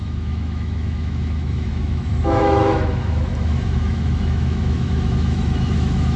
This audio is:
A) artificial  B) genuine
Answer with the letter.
A